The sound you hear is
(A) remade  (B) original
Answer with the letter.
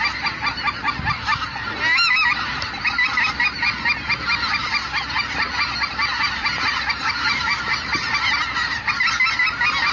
B